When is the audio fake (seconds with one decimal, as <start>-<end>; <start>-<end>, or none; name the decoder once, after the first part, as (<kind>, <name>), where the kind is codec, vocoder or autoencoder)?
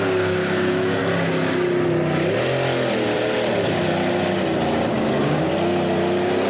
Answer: 0.0-1.0 (codec, DAC); 4.9-5.5